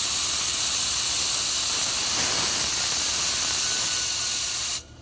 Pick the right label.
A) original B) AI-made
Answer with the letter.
A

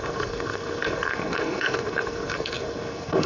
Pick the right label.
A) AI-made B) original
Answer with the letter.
A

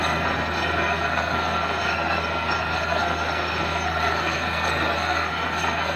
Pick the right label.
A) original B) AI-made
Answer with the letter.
B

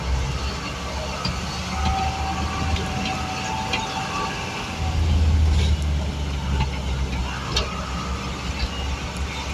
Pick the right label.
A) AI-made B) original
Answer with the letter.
B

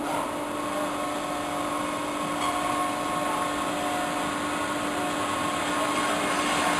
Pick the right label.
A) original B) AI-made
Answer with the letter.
A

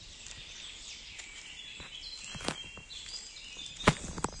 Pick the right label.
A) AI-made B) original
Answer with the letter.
B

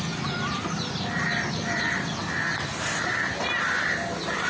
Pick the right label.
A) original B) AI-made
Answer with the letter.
A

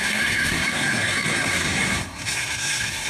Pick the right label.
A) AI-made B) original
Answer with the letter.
A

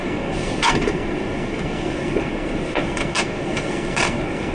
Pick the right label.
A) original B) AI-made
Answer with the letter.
B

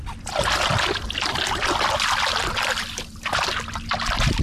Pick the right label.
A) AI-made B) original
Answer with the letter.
B